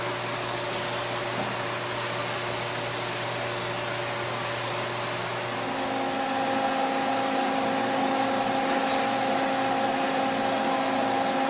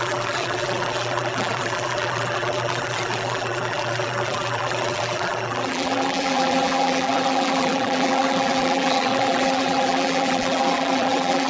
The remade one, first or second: second